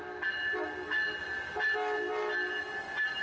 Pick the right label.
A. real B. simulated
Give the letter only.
A